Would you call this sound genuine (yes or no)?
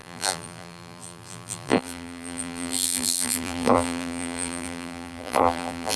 no